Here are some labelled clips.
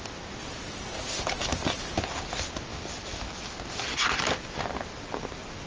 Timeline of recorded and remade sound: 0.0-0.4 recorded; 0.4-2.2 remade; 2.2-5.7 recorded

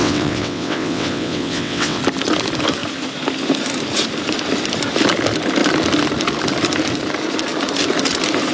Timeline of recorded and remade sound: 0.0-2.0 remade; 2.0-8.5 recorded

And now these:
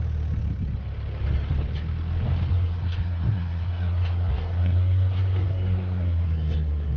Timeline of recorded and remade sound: 0.0-2.5 recorded; 2.5-7.0 remade

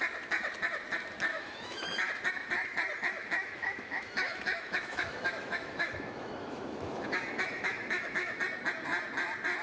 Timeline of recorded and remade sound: 0.0-1.3 recorded; 1.3-2.1 remade; 2.1-3.2 recorded; 3.2-8.4 remade; 8.4-9.6 recorded

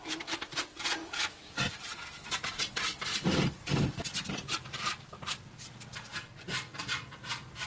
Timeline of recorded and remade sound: 0.0-1.0 recorded; 1.0-1.5 remade; 1.5-7.7 recorded

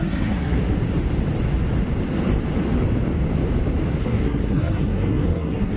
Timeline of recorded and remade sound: 0.0-0.6 remade; 0.6-4.0 recorded; 4.0-5.8 remade